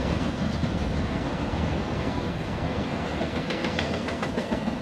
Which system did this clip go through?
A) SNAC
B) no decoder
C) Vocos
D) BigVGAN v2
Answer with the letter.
A